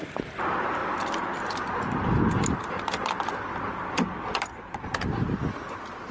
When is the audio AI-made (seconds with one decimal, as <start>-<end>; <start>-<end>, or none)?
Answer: none